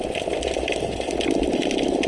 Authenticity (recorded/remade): recorded